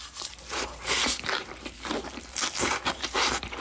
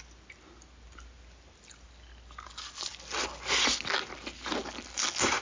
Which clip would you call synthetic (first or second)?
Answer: first